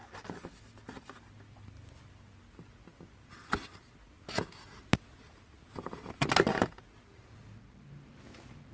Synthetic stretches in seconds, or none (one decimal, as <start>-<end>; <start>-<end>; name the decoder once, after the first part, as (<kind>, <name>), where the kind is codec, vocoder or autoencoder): none